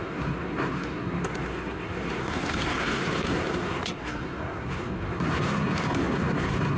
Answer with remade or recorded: remade